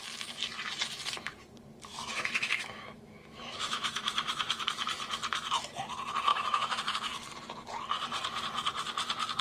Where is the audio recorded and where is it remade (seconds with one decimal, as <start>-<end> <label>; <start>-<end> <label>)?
0.0-1.9 recorded; 1.9-4.7 remade; 4.7-6.3 recorded; 6.3-7.1 remade; 7.1-9.4 recorded